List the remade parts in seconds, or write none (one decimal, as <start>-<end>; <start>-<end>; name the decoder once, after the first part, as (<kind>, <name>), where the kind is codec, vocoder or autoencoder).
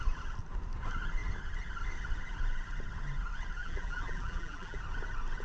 3.6-4.8 (vocoder, BigVGAN v2)